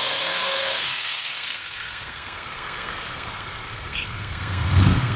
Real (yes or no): no